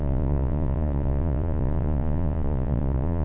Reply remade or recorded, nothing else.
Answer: remade